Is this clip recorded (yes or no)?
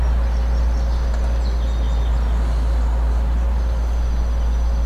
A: yes